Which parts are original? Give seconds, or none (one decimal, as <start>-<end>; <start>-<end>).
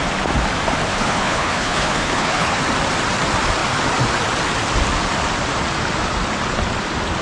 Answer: 0.0-0.9; 2.6-7.2